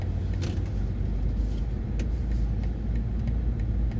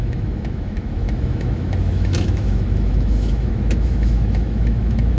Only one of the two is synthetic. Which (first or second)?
second